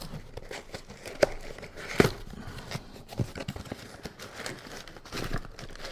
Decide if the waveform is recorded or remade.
recorded